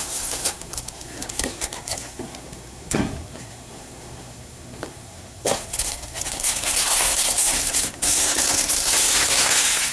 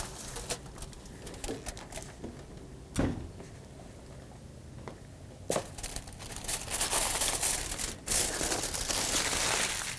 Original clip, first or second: second